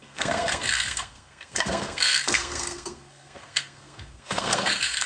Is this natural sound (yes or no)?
no